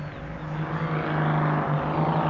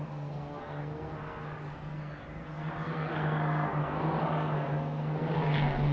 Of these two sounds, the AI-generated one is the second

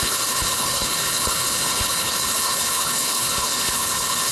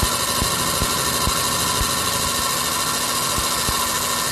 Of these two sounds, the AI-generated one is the first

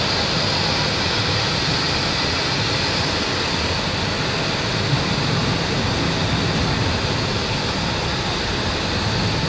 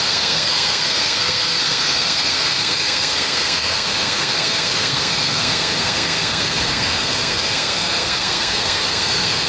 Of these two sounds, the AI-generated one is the second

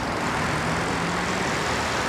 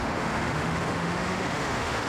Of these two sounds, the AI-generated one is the second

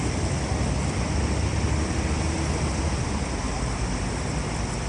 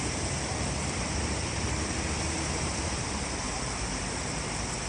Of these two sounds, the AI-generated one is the second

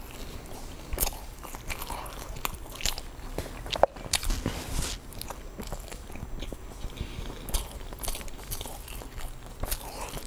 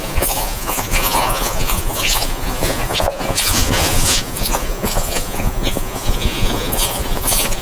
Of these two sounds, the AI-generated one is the second